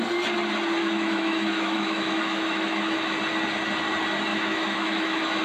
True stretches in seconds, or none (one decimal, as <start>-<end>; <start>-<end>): 0.0-0.8; 3.2-4.3